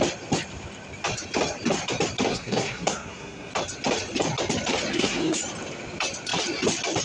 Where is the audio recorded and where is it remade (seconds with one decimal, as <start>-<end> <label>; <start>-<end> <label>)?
0.0-2.3 recorded; 2.3-3.5 remade; 3.5-4.9 recorded; 4.9-5.4 remade; 5.4-7.0 recorded